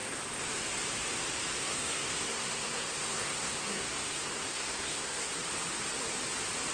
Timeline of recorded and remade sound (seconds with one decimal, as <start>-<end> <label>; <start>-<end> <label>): 0.0-1.6 recorded; 1.6-5.3 remade; 5.3-6.7 recorded